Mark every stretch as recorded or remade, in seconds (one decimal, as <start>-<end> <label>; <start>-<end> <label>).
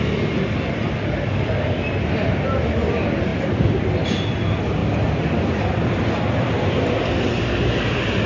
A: 0.0-8.3 recorded